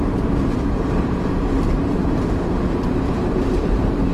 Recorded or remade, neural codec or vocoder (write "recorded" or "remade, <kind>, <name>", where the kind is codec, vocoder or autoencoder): remade, vocoder, BigVGAN v2